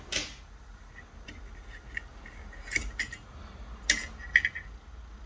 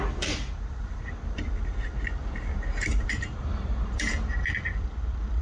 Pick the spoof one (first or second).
second